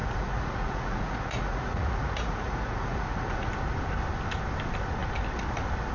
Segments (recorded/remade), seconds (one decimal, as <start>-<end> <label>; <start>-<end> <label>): 0.0-3.5 remade; 3.5-5.9 recorded